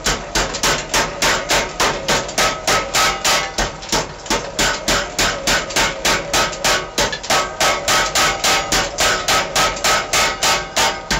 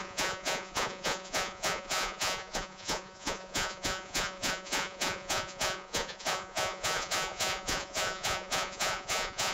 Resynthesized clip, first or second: second